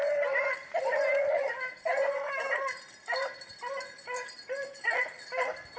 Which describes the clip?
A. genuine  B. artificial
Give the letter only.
A